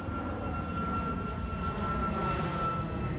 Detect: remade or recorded recorded